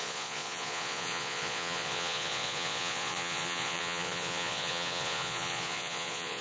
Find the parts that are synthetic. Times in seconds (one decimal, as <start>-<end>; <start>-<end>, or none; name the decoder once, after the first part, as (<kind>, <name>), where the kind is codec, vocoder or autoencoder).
0.0-6.4 (vocoder, Vocos)